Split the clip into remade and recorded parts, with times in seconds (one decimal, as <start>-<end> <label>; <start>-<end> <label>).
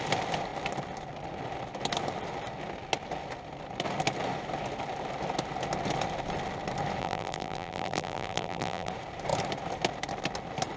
0.0-7.0 recorded; 7.0-8.9 remade; 8.9-10.8 recorded